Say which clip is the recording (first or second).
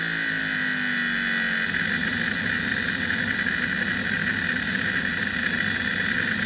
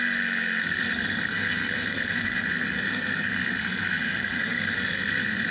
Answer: first